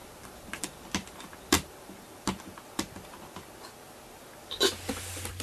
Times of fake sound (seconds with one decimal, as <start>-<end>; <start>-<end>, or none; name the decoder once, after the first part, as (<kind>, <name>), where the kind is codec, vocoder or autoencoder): 0.0-5.4 (vocoder, BigVGAN v2)